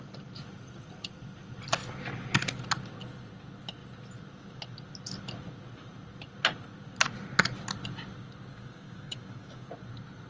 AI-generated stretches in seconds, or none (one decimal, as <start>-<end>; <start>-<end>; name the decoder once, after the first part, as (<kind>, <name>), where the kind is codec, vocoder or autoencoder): 8.5-9.7 (codec, DAC)